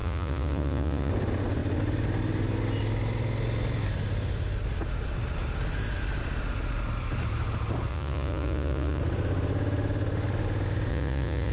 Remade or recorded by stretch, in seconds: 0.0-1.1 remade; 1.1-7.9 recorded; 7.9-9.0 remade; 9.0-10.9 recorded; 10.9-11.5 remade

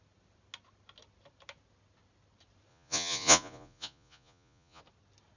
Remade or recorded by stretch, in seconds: 0.0-2.7 recorded; 2.7-4.8 remade; 4.8-5.4 recorded

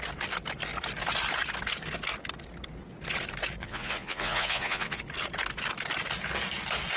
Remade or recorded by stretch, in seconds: 0.0-3.6 recorded; 3.6-5.0 remade; 5.0-7.0 recorded